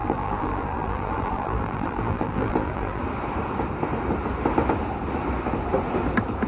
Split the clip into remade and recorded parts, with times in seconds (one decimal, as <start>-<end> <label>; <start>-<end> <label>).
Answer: 0.0-3.0 remade; 3.0-6.5 recorded

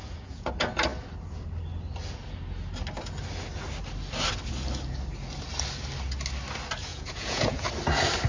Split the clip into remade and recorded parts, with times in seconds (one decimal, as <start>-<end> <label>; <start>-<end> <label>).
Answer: 0.0-0.5 remade; 0.5-6.9 recorded; 6.9-7.7 remade; 7.7-8.3 recorded

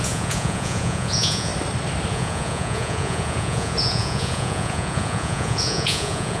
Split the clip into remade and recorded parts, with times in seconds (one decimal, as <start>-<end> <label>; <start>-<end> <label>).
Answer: 0.0-1.5 remade; 1.5-2.1 recorded; 2.1-6.4 remade

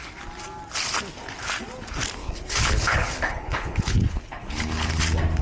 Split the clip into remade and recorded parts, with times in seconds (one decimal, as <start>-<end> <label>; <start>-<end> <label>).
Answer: 0.0-2.2 recorded; 2.2-5.0 remade; 5.0-5.4 recorded